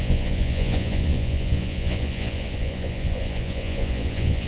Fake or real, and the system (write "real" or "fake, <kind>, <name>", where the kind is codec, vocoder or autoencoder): fake, vocoder, Vocos